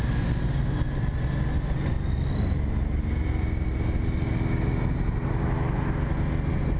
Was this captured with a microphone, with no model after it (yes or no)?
yes